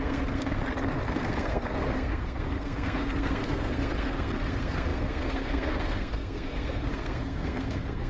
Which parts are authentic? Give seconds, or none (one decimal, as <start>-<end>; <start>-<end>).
0.6-1.1